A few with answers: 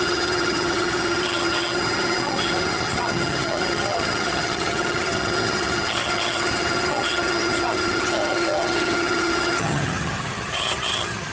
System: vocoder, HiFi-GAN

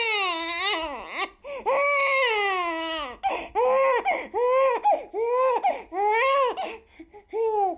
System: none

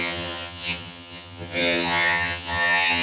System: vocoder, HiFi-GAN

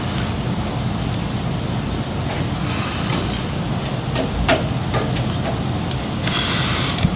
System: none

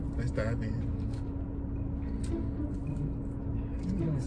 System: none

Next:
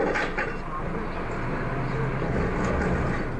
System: none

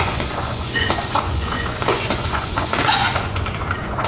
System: vocoder, Vocos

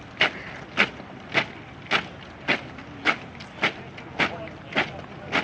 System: none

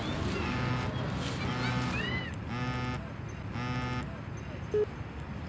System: none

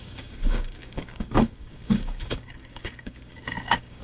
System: codec, DAC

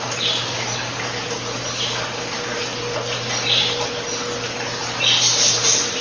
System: none